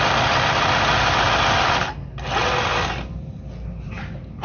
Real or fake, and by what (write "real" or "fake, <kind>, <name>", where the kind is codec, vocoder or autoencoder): real